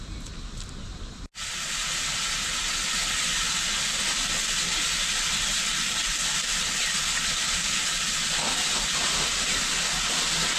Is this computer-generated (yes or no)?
no